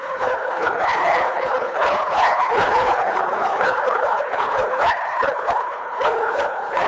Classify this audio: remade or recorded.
remade